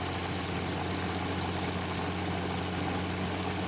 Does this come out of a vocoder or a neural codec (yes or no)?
no